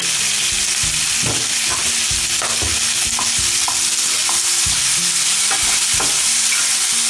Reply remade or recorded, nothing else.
recorded